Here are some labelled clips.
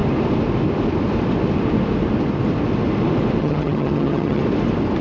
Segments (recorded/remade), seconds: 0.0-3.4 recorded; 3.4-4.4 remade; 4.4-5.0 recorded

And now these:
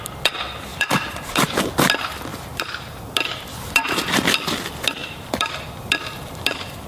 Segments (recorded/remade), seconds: 0.0-0.7 recorded; 0.7-1.6 remade; 1.6-2.3 recorded; 2.3-3.0 remade; 3.0-5.0 recorded; 5.0-5.5 remade; 5.5-6.9 recorded

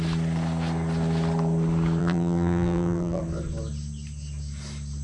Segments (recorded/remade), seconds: 0.0-2.0 recorded; 2.0-3.2 remade; 3.2-5.0 recorded

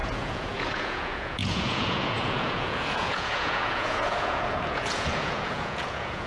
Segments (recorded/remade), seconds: 0.0-6.3 remade